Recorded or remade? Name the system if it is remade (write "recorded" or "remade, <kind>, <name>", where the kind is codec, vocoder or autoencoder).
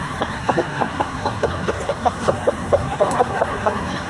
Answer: remade, codec, SNAC